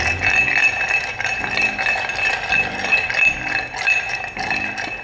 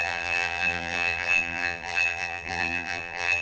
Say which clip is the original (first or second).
first